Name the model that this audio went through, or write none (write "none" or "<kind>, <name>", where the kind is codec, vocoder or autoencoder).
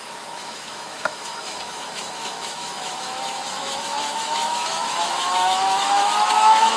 autoencoder, DAC-VAE